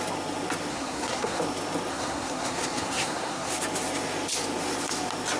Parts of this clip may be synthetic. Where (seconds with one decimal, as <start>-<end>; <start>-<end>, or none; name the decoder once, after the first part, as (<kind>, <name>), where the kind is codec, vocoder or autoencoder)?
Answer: 0.7-1.4 (codec, SNAC); 1.9-3.5